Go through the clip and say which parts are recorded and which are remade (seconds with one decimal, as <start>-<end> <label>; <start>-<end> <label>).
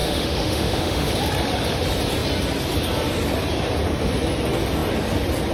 0.0-1.1 remade; 1.1-5.5 recorded